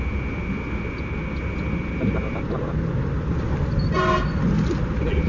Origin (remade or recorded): recorded